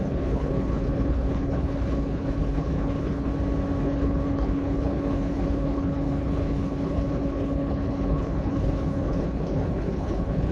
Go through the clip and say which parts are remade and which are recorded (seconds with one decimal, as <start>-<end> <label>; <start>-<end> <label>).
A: 0.0-3.3 remade; 3.3-3.8 recorded; 3.8-10.5 remade